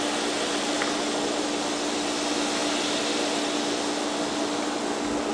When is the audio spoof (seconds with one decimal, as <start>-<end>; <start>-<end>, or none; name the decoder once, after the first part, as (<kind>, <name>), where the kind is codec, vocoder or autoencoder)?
none